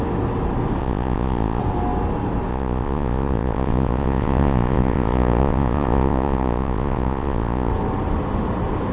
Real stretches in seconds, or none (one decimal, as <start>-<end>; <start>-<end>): 0.0-0.8; 1.6-2.5; 7.7-8.9